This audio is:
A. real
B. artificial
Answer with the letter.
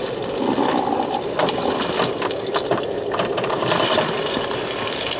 A